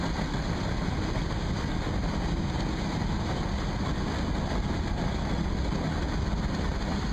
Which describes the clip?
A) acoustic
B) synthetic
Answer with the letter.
A